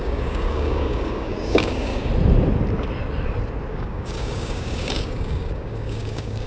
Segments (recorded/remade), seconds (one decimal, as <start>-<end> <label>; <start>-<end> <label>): 0.0-2.1 remade; 2.1-3.7 recorded; 3.7-6.5 remade